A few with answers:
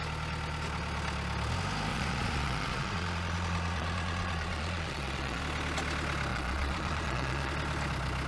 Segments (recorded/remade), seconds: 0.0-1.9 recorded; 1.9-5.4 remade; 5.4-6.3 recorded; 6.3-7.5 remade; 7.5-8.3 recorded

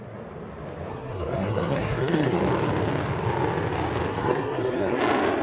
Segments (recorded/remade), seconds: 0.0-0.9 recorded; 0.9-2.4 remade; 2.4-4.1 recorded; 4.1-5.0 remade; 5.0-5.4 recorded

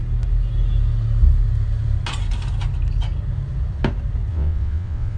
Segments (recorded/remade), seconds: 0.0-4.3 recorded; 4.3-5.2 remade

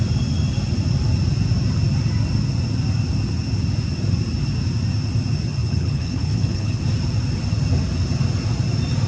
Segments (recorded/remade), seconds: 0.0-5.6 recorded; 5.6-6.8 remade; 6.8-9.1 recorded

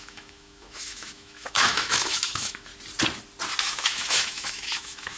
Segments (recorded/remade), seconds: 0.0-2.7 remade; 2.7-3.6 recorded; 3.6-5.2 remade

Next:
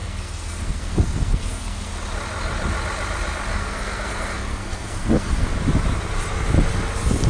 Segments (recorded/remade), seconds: 0.0-1.9 remade; 1.9-3.5 recorded; 3.5-5.5 remade; 5.5-7.3 recorded

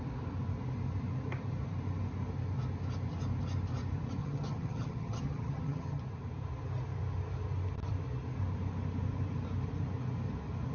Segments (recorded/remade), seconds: 0.0-4.2 recorded; 4.2-6.0 remade; 6.0-10.7 recorded